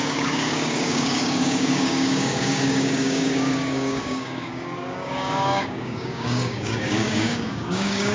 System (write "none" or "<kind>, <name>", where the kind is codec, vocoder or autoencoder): codec, DAC